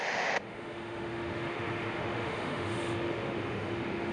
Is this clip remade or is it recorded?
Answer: remade